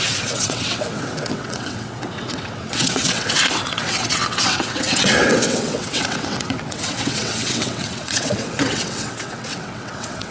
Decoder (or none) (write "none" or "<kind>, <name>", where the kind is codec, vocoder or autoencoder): vocoder, WaveNeXt